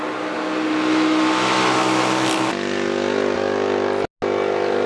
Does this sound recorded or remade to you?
recorded